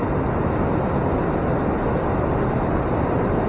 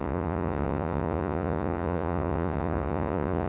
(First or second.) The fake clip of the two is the second